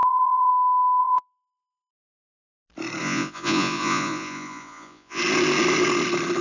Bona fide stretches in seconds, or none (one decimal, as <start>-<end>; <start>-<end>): 0.5-1.0; 1.9-3.0; 5.2-6.4